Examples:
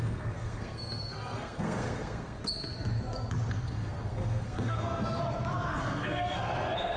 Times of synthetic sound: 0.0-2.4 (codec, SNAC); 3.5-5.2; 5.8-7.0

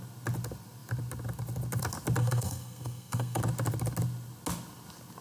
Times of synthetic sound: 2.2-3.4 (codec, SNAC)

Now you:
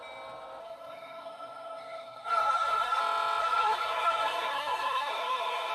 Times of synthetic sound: 0.6-3.0 (codec, SNAC); 3.4-5.7

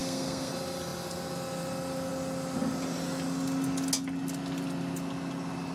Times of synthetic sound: 0.0-0.5 (codec, SNAC)